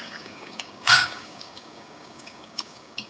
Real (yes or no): no